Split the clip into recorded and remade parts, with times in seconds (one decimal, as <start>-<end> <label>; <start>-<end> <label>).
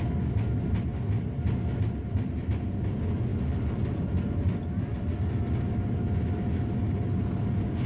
0.0-7.9 recorded